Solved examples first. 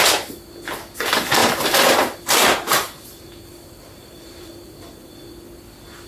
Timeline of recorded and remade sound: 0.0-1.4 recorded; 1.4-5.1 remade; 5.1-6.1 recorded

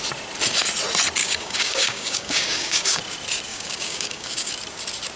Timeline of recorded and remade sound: 0.0-1.2 recorded; 1.2-3.0 remade; 3.0-3.5 recorded; 3.5-4.5 remade; 4.5-5.2 recorded

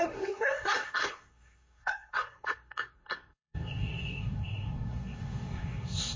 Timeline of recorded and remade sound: 0.0-6.2 remade

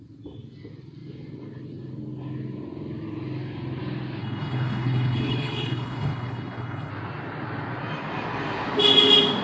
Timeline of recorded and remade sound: 0.0-4.2 recorded; 4.2-6.9 remade; 6.9-9.4 recorded

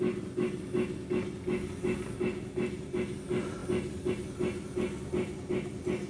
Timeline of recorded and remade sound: 0.0-6.1 recorded

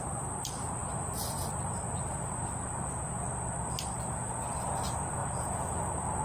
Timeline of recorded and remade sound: 0.0-5.2 recorded; 5.2-5.8 remade; 5.8-6.2 recorded

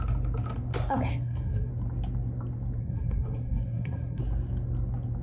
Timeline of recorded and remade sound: 0.0-1.1 recorded; 1.1-1.7 remade; 1.7-2.8 recorded; 2.8-4.2 remade; 4.2-5.2 recorded